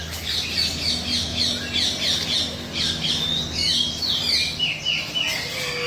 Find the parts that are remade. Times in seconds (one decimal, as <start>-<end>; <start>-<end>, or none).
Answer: none

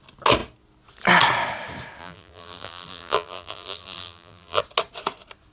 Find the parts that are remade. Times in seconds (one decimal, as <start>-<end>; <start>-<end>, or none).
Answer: 2.0-4.6

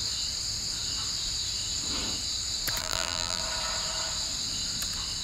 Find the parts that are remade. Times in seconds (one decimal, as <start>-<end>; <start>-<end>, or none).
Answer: 2.8-3.4